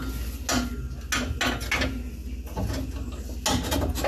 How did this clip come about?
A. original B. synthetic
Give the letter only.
A